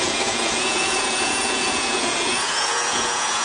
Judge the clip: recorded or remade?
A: remade